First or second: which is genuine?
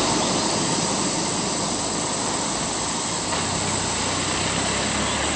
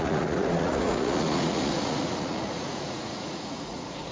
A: first